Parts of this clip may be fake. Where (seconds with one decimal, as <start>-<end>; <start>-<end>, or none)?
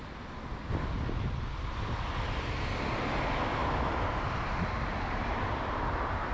none